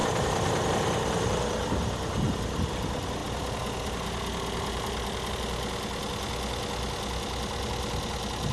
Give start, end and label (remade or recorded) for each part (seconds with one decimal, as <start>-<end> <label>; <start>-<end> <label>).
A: 0.0-8.5 recorded